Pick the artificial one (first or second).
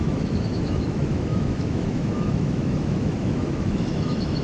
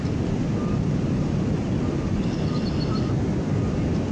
first